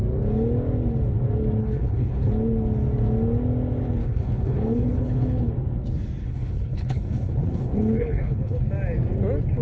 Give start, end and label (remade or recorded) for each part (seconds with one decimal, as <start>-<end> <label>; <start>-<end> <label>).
0.0-1.6 recorded; 1.6-2.3 remade; 2.3-4.0 recorded; 4.0-5.5 remade; 5.5-6.2 recorded; 6.2-8.6 remade; 8.6-9.6 recorded